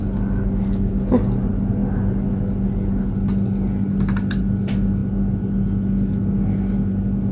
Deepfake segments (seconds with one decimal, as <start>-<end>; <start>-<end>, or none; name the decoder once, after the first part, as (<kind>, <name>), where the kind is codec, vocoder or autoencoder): none